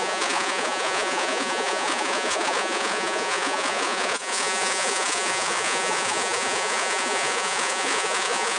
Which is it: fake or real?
fake